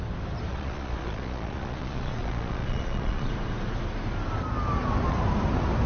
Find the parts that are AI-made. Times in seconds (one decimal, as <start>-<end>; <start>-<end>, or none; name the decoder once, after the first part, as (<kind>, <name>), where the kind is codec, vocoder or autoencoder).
0.5-3.3 (vocoder, Vocos)